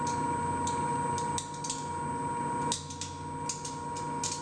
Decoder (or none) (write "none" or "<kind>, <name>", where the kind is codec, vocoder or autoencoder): none